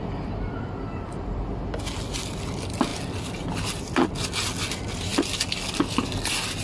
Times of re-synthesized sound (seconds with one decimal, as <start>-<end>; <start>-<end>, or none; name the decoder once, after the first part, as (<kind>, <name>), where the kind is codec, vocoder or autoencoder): none